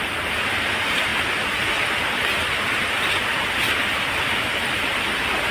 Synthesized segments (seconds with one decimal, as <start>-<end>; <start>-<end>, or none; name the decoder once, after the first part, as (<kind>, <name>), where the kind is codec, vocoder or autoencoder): none